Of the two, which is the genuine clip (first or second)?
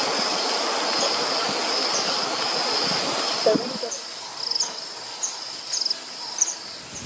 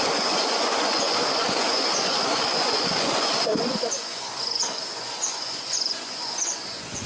first